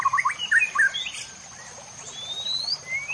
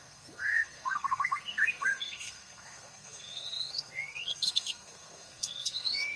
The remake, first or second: second